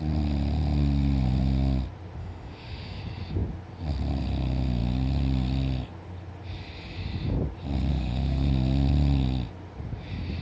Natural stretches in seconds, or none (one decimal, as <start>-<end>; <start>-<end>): 0.0-2.2; 3.0-7.9; 8.5-10.4